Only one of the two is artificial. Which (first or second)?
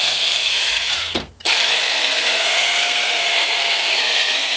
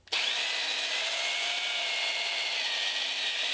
first